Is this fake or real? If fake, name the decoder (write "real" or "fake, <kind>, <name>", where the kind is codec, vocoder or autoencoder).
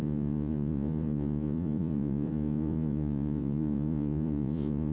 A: fake, vocoder, Vocos